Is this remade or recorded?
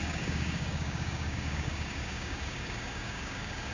remade